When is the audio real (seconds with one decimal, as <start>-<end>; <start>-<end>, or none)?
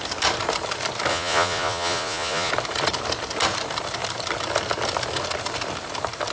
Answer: 0.0-1.1; 2.5-6.3